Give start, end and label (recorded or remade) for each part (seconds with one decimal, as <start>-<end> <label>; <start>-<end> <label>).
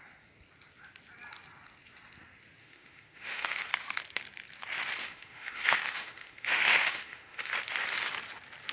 0.0-2.6 recorded; 2.6-3.7 remade; 3.7-5.0 recorded; 5.0-7.5 remade; 7.5-8.7 recorded